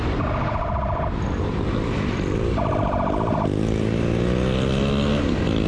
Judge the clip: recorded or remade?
recorded